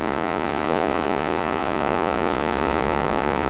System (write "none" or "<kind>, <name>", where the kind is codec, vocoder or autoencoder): vocoder, Vocos